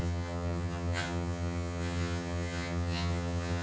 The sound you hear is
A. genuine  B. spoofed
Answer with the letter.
B